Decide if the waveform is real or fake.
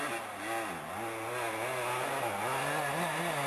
real